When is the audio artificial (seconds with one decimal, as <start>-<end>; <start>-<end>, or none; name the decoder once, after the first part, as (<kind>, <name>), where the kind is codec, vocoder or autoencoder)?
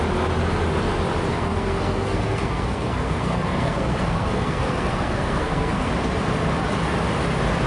1.3-5.9 (codec, SNAC)